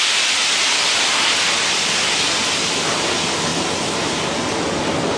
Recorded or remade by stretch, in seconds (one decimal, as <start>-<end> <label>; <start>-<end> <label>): 0.0-5.2 recorded